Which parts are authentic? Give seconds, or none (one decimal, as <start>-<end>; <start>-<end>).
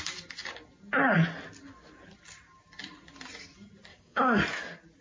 0.0-3.9; 4.4-5.0